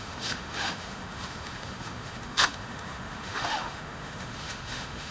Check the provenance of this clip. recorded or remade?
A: remade